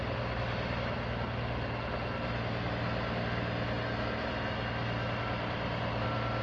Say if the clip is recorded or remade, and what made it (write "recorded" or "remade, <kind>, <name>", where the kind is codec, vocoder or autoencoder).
recorded